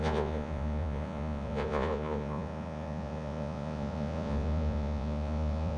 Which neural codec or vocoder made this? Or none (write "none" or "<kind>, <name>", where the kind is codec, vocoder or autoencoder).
vocoder, Vocos